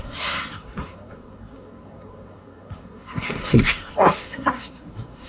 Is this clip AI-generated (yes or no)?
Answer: yes